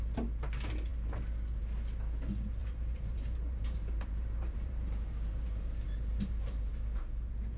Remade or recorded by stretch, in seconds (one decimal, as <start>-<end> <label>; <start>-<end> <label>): 0.0-2.6 recorded; 2.6-6.7 remade; 6.7-7.6 recorded